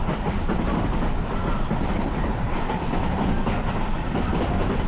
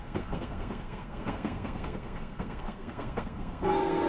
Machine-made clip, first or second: second